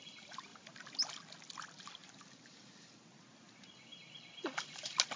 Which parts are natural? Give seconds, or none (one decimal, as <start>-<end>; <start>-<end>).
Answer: 0.0-5.2